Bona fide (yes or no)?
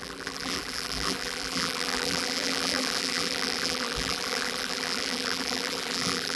no